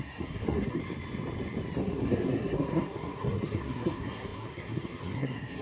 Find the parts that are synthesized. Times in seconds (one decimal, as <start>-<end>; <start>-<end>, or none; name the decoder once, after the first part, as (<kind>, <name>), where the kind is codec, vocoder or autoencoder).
0.0-0.8 (codec, SNAC); 1.8-5.6